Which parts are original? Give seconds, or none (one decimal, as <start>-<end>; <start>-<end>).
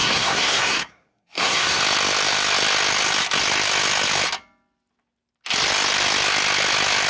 1.8-7.1